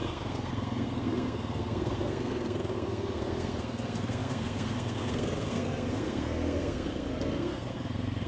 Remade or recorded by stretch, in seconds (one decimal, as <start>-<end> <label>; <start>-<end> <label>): 0.0-8.3 remade